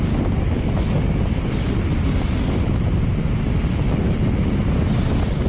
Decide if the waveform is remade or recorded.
recorded